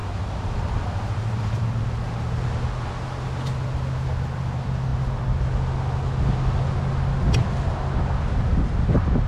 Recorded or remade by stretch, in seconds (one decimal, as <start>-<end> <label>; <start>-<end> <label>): 0.0-1.8 remade; 1.8-9.3 recorded